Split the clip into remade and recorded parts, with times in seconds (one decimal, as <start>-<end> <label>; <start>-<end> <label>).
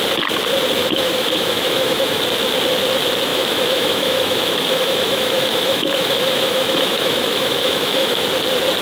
0.0-0.8 recorded; 0.8-2.2 remade; 2.2-3.3 recorded; 3.3-8.2 remade; 8.2-8.8 recorded